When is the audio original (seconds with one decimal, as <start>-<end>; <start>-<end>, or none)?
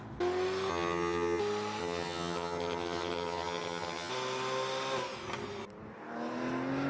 0.0-0.7; 1.4-1.8; 4.1-6.9